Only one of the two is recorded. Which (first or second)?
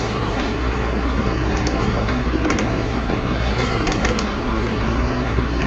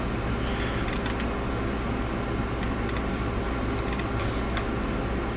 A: second